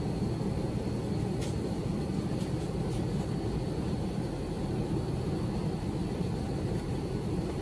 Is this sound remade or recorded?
recorded